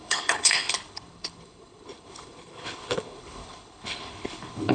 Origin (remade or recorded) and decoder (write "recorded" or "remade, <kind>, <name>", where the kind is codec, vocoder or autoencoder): remade, codec, HILCodec